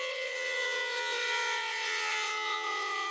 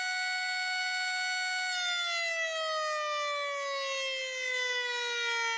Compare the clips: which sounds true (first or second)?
second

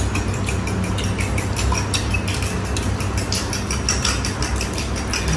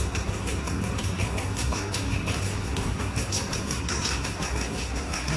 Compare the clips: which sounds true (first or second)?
first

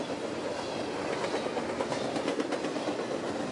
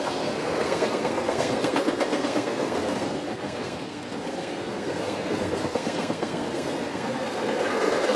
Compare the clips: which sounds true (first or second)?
first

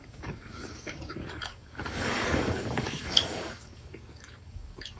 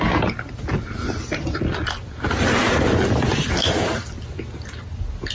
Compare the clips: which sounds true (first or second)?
second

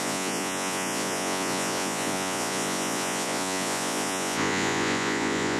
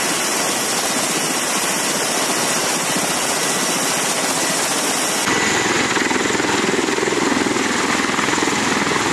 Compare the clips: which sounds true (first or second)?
second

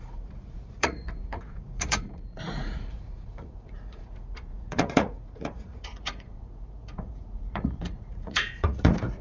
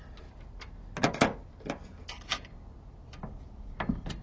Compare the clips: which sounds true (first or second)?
second